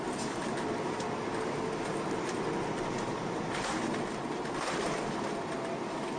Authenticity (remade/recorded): recorded